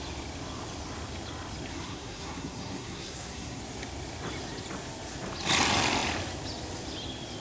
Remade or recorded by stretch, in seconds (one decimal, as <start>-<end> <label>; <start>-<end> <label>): 0.0-1.7 recorded; 1.7-3.6 remade; 3.6-7.4 recorded